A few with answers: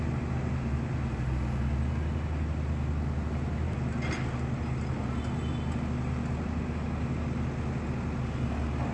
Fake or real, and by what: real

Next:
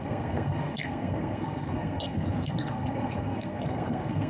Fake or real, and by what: fake, codec, SNAC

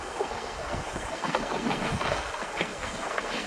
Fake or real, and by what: fake, codec, SNAC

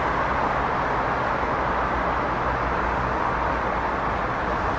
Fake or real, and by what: real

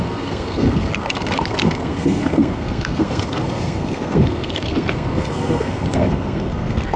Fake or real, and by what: fake, codec, SNAC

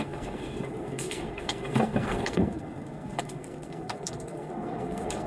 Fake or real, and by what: fake, codec, SNAC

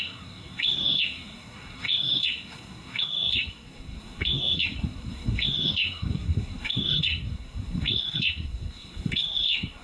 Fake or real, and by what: fake, codec, SNAC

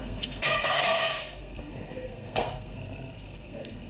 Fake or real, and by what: fake, codec, SNAC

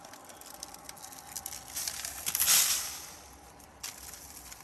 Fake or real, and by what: real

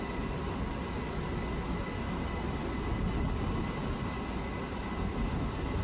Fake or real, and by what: real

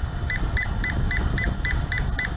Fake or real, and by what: real